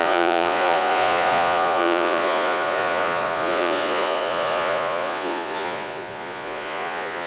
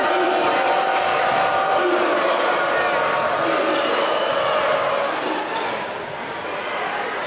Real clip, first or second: second